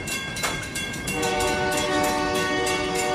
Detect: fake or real fake